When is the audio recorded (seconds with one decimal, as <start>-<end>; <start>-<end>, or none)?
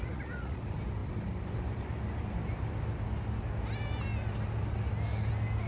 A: 0.6-5.7